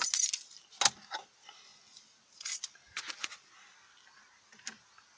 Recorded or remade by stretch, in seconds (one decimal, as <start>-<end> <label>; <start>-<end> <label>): 0.0-5.2 recorded